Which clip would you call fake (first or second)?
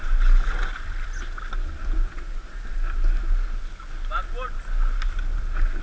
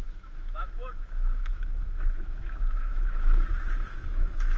second